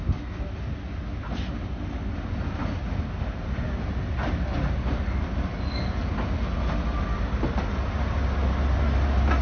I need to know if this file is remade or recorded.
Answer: recorded